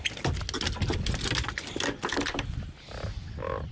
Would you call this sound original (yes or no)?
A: yes